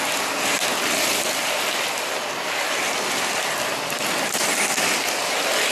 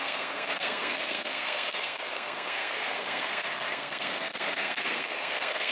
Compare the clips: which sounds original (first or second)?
first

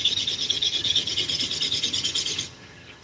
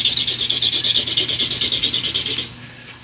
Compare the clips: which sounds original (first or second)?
second